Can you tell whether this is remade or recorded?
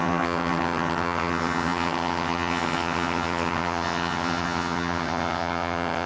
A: remade